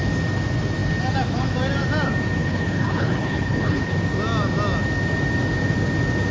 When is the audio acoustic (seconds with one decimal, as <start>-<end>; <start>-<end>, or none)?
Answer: 0.0-2.4; 3.9-6.3

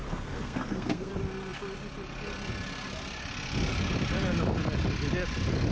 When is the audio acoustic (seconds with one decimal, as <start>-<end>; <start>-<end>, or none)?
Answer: 1.1-5.7

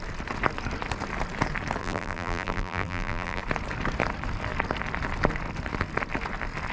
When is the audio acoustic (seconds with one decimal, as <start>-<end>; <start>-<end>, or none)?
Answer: 0.0-1.8; 3.4-6.7

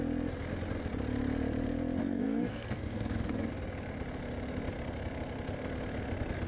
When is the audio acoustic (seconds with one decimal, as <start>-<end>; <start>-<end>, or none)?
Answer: 0.0-2.0; 3.5-6.5

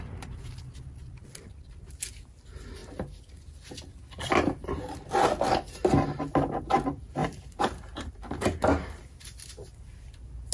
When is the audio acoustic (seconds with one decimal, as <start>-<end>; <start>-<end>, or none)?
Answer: 0.0-7.2; 9.0-10.5

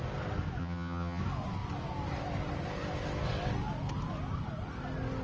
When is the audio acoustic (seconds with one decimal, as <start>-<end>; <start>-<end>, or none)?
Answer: 0.0-0.6; 1.2-5.2